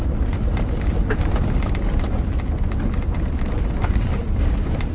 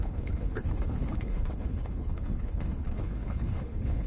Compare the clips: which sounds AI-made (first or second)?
second